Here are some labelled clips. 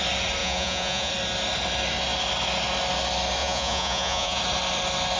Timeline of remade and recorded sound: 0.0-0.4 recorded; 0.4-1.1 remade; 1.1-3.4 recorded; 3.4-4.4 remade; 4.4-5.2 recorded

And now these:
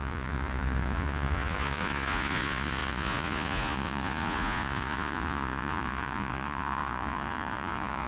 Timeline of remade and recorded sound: 0.0-8.1 remade

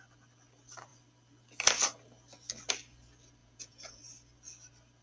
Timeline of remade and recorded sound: 0.0-3.4 recorded; 3.4-4.0 remade; 4.0-5.0 recorded

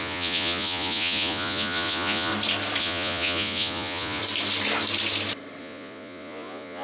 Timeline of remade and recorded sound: 0.0-2.3 remade; 2.3-2.8 recorded; 2.8-4.2 remade; 4.2-5.6 recorded; 5.6-6.8 remade

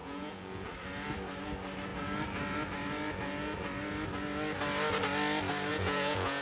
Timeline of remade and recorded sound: 0.0-0.7 remade; 0.7-5.7 recorded; 5.7-6.4 remade

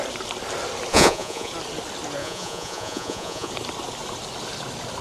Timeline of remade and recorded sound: 0.0-0.9 recorded; 0.9-1.5 remade; 1.5-2.2 recorded; 2.2-3.5 remade; 3.5-5.0 recorded

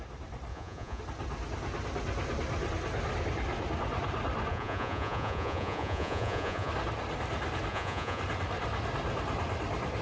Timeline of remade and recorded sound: 0.0-0.5 recorded; 0.5-1.0 remade; 1.0-4.5 recorded; 4.5-6.7 remade; 6.7-7.7 recorded; 7.7-8.2 remade; 8.2-10.0 recorded

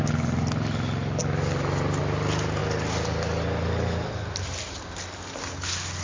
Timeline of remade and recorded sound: 0.0-6.0 recorded